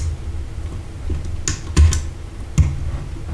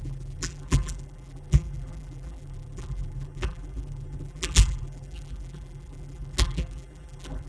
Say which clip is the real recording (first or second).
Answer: first